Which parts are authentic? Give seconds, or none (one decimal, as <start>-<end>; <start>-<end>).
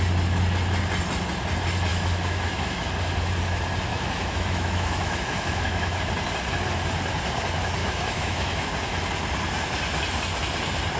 0.0-1.9; 2.9-3.9; 6.0-7.8; 8.7-11.0